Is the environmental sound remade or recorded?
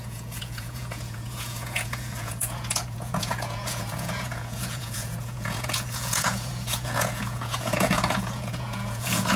remade